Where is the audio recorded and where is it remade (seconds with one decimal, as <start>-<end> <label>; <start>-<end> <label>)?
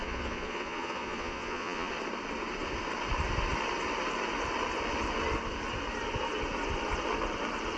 0.0-1.9 remade; 1.9-7.8 recorded